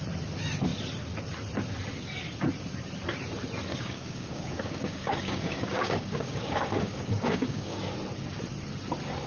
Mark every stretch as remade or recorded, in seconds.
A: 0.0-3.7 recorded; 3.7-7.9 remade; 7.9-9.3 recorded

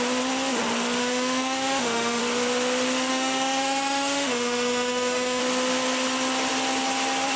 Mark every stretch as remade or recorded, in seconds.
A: 0.0-1.0 recorded; 1.0-2.2 remade; 2.2-3.1 recorded; 3.1-5.4 remade; 5.4-7.4 recorded

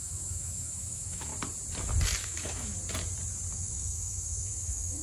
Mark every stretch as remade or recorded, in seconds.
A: 0.0-1.3 remade; 1.3-2.2 recorded; 2.2-2.7 remade; 2.7-3.5 recorded; 3.5-5.0 remade